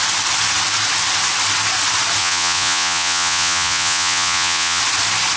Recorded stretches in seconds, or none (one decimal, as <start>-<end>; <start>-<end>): 0.0-2.2; 4.8-5.4